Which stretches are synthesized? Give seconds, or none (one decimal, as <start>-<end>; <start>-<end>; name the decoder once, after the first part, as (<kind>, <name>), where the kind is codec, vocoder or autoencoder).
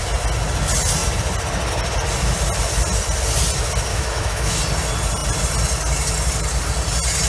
3.9-4.6 (autoencoder, DAC-VAE)